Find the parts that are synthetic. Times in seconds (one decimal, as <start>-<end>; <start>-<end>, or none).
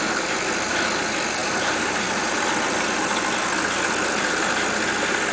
1.4-2.4